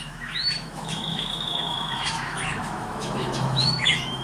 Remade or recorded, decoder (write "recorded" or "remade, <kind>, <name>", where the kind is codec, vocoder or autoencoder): remade, autoencoder, DAC-VAE